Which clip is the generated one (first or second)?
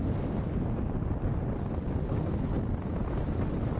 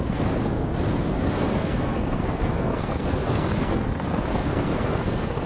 second